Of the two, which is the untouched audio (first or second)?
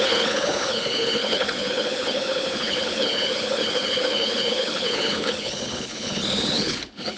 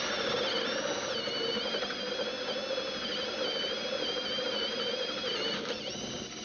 second